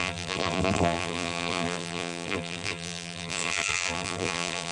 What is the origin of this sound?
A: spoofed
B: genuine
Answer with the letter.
A